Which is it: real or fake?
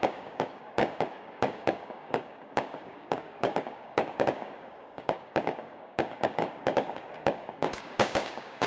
fake